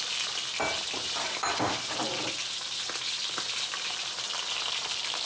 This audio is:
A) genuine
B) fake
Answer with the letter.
A